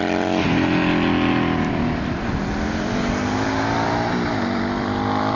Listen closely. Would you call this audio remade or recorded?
remade